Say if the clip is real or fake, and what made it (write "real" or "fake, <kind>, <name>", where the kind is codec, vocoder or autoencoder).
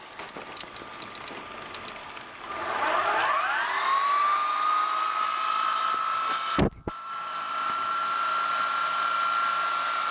real